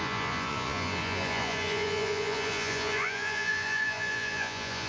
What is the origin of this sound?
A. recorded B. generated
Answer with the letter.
B